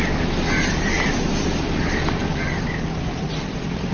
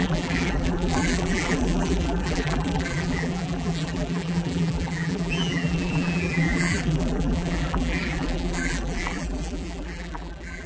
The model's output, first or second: second